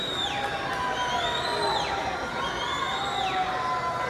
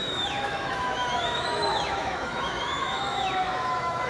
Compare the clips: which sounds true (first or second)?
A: first